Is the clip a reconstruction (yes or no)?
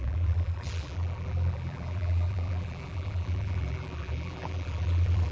yes